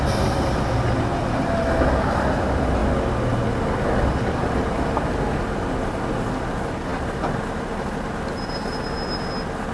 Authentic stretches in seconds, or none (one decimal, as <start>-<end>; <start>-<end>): 0.0-9.7